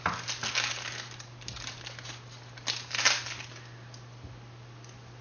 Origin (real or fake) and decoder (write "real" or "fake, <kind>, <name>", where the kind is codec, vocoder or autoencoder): real